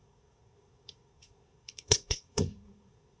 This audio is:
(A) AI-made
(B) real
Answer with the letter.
A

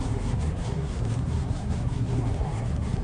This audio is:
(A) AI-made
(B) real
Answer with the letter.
A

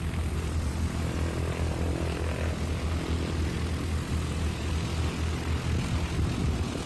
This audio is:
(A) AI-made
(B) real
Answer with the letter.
B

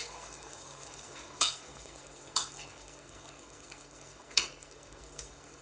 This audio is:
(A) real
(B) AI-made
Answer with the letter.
B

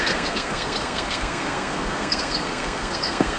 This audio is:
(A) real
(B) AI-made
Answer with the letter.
B